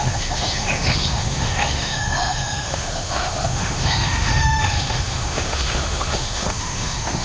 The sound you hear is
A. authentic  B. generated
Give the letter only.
B